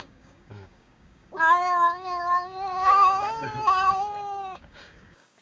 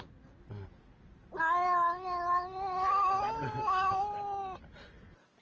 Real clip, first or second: second